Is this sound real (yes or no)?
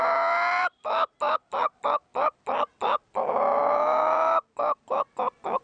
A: yes